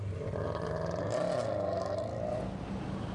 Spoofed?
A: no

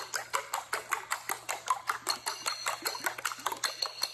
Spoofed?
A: no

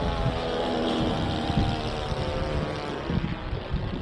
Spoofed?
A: no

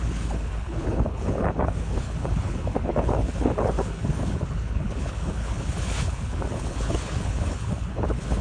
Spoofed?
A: yes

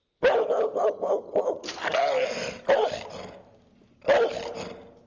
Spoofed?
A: no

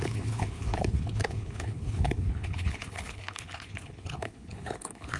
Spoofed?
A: yes